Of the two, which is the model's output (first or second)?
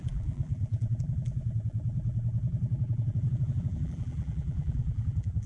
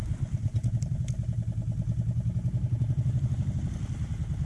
first